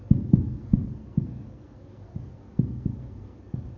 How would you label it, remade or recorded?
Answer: remade